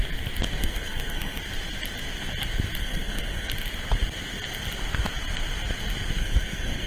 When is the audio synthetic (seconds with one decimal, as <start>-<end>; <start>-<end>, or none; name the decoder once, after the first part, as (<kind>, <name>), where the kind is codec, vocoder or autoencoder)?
0.6-1.4 (codec, SNAC); 2.8-3.5; 6.2-6.9